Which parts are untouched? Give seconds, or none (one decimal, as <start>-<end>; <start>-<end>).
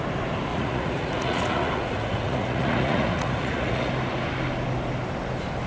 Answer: 0.0-0.5; 3.9-5.7